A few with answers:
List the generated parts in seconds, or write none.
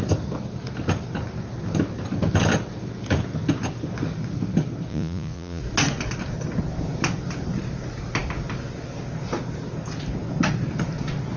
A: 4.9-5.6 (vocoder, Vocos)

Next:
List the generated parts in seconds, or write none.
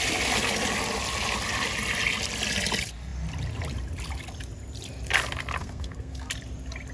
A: 5.6-6.3 (codec, SNAC)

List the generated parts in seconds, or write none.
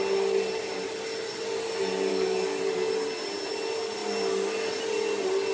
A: 2.1-2.6 (codec, DAC)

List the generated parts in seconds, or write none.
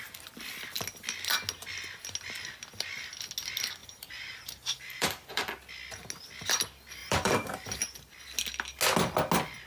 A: 3.8-5.4 (vocoder, BigVGAN v2); 7.0-8.1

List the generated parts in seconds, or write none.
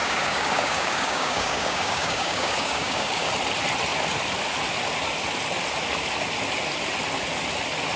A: 0.0-3.3 (codec, DAC)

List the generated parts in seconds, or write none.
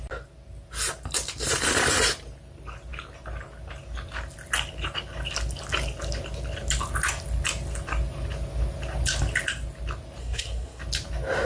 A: 10.2-10.8 (codec, SNAC)